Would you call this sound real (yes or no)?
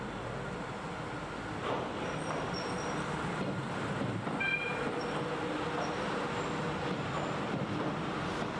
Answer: yes